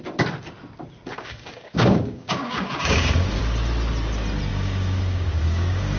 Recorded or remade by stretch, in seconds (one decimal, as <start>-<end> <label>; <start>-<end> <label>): 0.0-1.1 recorded; 1.1-3.4 remade; 3.4-4.5 recorded; 4.5-6.0 remade